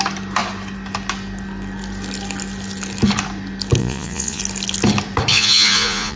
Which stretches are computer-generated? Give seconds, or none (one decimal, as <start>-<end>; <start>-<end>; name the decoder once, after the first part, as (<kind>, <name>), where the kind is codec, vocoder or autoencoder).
3.8-4.4 (vocoder, Vocos); 5.3-6.2